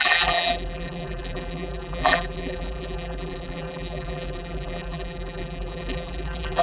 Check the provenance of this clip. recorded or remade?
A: remade